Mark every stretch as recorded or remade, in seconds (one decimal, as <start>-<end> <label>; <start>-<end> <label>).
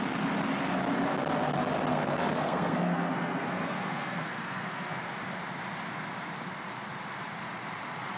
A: 0.0-1.9 recorded; 1.9-5.0 remade; 5.0-8.2 recorded